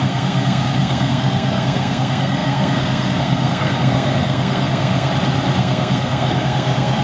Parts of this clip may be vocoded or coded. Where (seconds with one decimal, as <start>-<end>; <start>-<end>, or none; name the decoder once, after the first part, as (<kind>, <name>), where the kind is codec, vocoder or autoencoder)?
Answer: 0.0-5.1 (codec, SNAC); 5.6-7.0